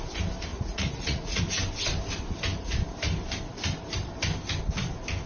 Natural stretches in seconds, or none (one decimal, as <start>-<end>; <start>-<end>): 0.0-0.5; 1.4-5.3